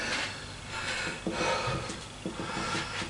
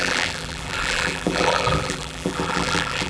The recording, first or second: first